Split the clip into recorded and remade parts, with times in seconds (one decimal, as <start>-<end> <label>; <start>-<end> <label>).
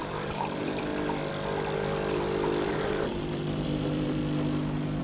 0.0-0.9 remade; 0.9-2.7 recorded; 2.7-4.2 remade; 4.2-5.0 recorded